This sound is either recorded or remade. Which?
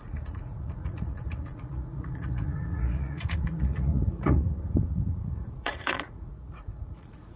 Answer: remade